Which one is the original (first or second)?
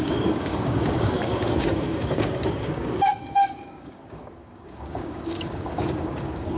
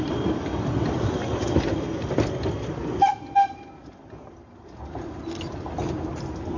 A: second